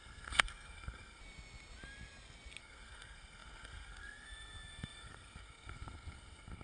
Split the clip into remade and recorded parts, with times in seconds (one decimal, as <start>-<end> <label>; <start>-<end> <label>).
0.0-1.2 remade; 1.2-2.6 recorded; 2.6-6.6 remade